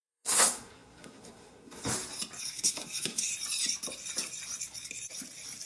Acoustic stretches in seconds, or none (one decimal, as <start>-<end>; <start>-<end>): 1.8-2.4; 3.3-5.7